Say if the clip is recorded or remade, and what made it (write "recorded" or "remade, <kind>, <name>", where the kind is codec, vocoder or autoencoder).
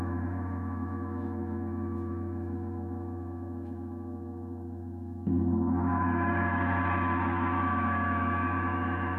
remade, autoencoder, DAC-VAE